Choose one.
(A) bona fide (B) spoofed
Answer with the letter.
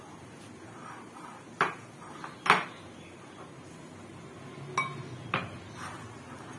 A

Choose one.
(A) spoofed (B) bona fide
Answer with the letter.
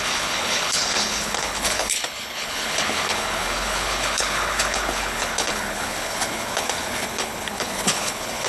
A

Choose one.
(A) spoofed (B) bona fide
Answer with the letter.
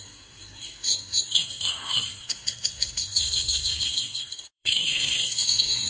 A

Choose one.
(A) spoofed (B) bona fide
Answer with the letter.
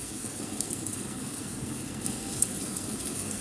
A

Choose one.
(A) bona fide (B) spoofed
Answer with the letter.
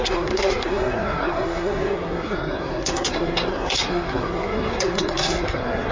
B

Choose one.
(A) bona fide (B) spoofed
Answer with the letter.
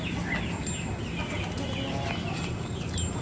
A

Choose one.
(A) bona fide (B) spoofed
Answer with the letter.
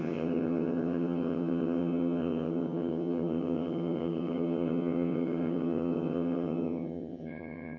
B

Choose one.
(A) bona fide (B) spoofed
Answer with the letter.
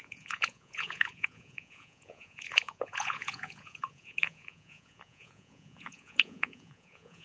B